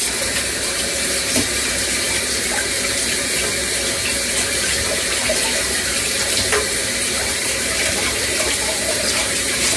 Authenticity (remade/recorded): remade